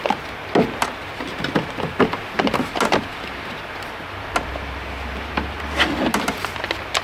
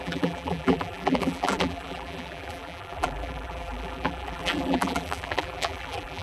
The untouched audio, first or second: first